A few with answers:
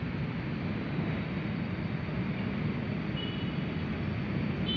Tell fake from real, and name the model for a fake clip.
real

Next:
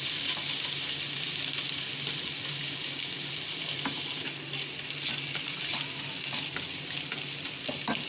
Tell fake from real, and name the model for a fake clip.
real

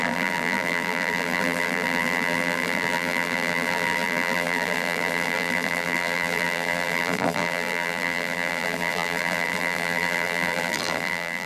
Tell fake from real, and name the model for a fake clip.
fake, vocoder, BigVGAN v2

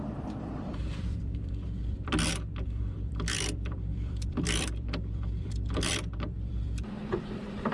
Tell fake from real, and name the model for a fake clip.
fake, vocoder, BigVGAN v2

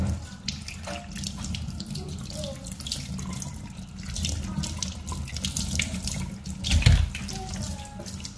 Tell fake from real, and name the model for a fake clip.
real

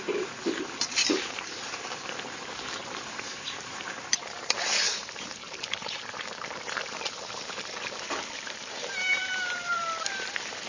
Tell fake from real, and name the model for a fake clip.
fake, vocoder, BigVGAN v2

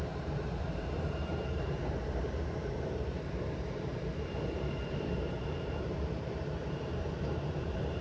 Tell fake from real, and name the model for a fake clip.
fake, vocoder, BigVGAN v2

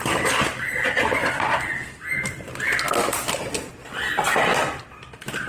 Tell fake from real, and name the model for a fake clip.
real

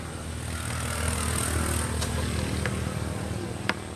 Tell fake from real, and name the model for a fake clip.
real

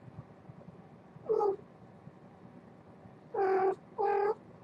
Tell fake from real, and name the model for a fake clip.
real